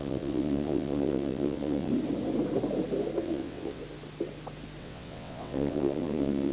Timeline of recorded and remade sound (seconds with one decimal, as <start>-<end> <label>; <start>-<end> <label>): 0.0-1.9 remade; 1.9-3.2 recorded; 3.2-3.8 remade; 3.8-4.8 recorded; 4.8-6.5 remade